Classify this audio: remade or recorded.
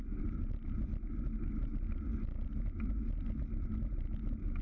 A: recorded